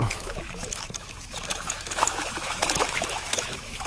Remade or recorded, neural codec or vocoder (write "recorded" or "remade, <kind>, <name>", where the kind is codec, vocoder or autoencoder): remade, autoencoder, DAC-VAE